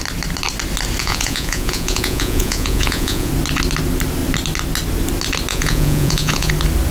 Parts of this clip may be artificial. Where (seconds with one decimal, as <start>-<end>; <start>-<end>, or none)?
1.0-3.3; 5.5-6.5